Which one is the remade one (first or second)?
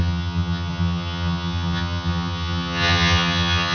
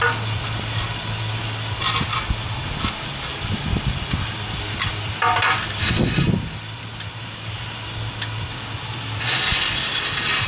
first